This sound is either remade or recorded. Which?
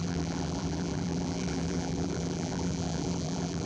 remade